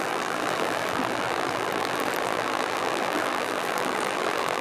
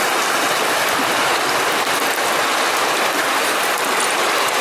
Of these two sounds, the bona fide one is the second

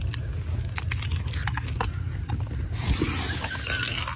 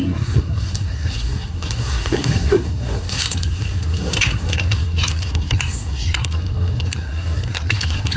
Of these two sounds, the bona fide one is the first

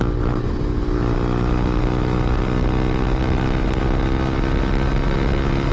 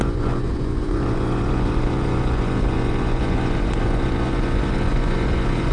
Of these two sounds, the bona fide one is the first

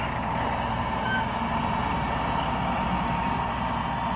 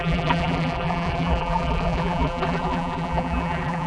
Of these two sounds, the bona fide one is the first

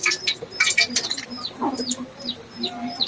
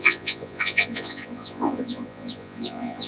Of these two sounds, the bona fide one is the first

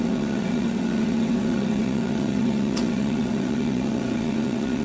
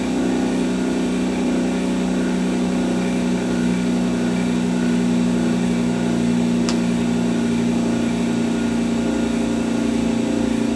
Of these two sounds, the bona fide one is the second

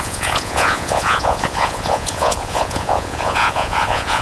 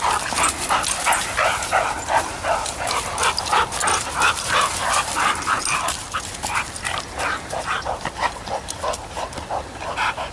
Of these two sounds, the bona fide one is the second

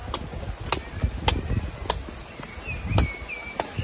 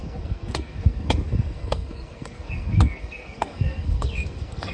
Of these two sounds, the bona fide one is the first